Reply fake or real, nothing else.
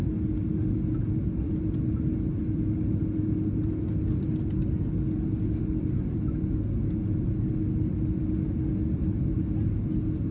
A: real